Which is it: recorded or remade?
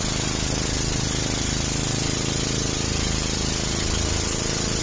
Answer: recorded